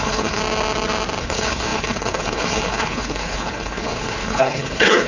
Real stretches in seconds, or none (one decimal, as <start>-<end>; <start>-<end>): 0.4-1.2